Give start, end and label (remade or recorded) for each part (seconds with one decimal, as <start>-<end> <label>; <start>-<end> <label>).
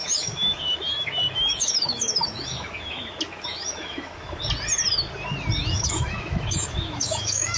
0.0-4.4 remade; 4.4-5.6 recorded; 5.6-7.6 remade